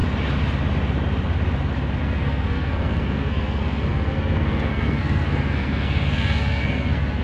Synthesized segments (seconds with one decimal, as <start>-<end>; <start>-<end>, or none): 2.0-7.2